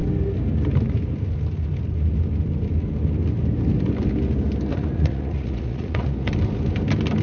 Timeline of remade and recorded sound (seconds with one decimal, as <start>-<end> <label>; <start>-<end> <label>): 0.0-4.7 recorded; 4.7-6.3 remade; 6.3-7.2 recorded